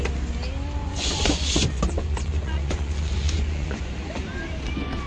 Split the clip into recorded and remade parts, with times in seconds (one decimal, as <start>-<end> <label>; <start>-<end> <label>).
0.0-0.8 recorded; 0.8-3.9 remade; 3.9-5.1 recorded